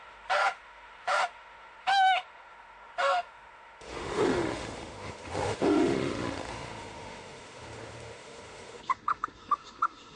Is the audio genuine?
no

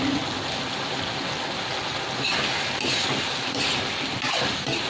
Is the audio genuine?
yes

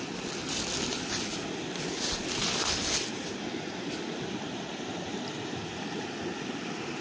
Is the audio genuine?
yes